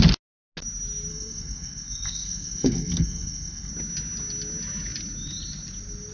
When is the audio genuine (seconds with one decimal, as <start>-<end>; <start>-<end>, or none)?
0.0-1.1; 3.7-6.1